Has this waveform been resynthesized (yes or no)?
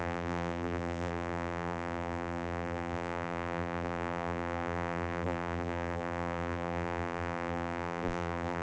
yes